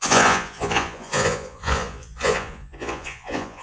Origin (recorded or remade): remade